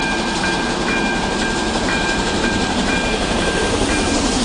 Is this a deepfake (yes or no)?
yes